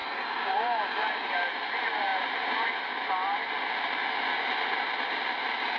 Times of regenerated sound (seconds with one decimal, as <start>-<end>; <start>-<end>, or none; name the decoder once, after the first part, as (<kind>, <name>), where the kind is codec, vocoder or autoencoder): none